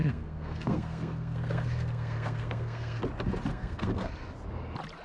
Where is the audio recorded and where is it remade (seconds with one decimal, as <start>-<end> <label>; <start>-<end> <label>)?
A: 0.0-3.0 remade; 3.0-3.5 recorded; 3.5-4.1 remade; 4.1-5.0 recorded